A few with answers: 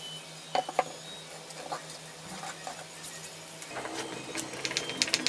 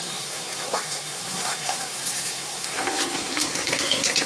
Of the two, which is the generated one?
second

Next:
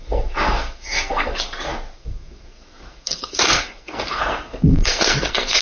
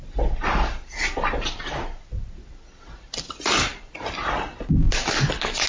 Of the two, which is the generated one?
first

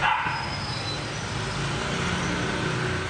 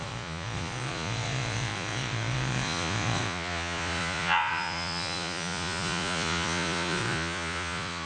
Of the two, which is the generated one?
second